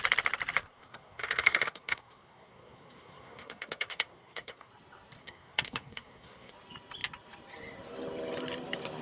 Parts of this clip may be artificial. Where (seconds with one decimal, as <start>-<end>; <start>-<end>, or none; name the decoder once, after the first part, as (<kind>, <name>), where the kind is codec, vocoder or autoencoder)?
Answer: 0.6-4.7 (codec, SNAC); 5.2-6.5